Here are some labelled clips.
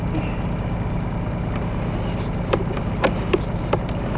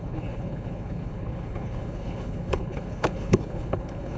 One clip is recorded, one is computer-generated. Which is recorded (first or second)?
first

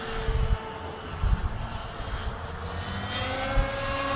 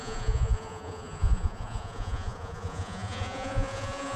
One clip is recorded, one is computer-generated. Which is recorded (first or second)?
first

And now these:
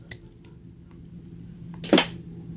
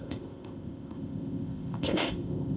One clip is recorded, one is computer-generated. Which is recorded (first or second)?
first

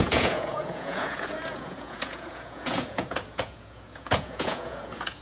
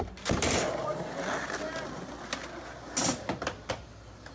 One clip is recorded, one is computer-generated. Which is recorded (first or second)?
second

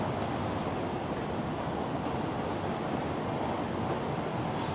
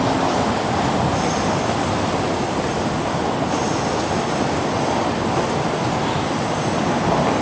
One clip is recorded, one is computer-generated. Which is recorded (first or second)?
first